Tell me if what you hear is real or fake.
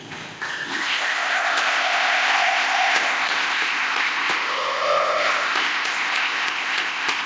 fake